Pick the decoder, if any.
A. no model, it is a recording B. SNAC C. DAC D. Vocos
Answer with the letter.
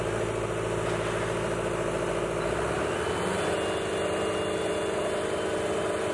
A